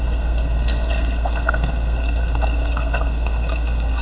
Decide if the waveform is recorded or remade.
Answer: remade